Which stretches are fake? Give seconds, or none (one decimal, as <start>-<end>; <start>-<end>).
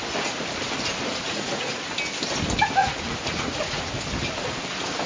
1.1-1.9; 2.8-3.9